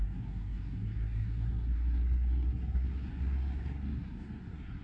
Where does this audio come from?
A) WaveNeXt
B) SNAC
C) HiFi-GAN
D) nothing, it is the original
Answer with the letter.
B